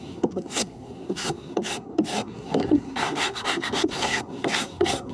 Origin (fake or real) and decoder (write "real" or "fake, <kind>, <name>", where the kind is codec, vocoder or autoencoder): fake, codec, SNAC